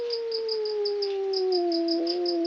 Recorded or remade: recorded